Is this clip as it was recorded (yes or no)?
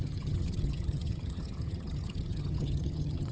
no